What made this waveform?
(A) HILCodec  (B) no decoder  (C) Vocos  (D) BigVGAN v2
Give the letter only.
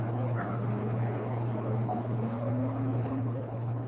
A